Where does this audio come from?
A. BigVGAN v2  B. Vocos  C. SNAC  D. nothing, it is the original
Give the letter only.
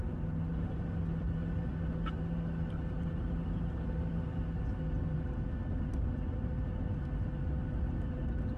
D